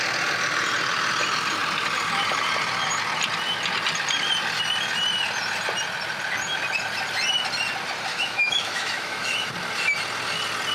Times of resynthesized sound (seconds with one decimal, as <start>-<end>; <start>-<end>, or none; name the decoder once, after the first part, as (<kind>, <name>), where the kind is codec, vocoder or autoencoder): 8.1-9.5 (autoencoder, DAC-VAE)